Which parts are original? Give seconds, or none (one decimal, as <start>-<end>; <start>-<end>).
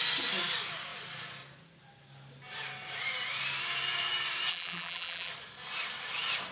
0.0-4.5; 5.3-6.5